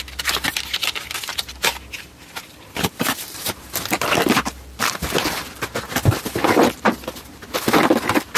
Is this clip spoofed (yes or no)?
yes